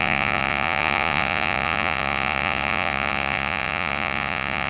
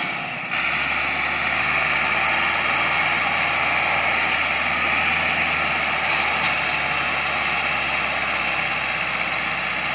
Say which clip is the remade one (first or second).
first